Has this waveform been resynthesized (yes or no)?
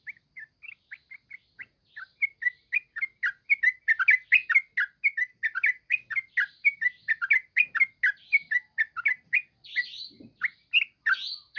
no